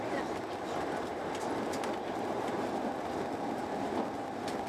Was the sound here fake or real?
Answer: fake